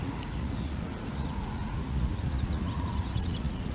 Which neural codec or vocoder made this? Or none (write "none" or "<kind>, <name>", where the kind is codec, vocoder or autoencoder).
vocoder, Vocos